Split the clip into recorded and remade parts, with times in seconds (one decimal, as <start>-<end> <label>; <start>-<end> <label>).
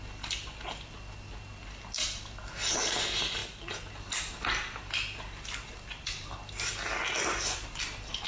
0.0-8.3 recorded